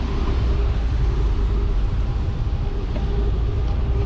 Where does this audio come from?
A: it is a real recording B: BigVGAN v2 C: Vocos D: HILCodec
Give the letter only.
A